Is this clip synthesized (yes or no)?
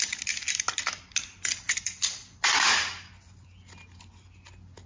no